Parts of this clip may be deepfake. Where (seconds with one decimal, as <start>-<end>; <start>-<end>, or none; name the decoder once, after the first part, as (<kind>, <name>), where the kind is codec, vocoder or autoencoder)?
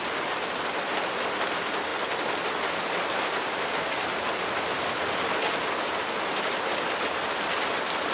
none